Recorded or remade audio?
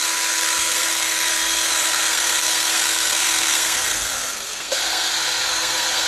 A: remade